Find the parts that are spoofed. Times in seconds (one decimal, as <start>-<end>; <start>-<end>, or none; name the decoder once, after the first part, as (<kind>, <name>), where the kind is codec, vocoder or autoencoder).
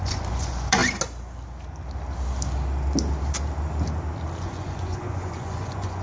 0.0-0.8 (vocoder, Vocos); 4.4-6.0